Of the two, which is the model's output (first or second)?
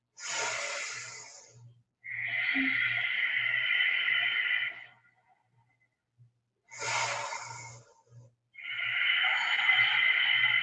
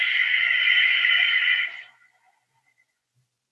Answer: second